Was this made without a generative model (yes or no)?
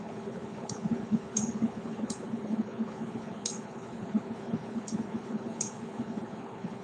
no